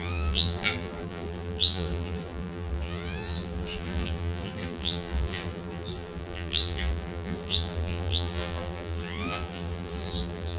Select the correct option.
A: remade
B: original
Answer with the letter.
A